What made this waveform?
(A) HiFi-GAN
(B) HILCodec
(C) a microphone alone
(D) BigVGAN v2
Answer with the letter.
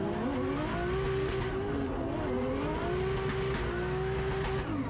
C